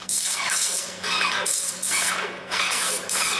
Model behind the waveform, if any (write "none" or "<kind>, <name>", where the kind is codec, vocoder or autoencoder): codec, SNAC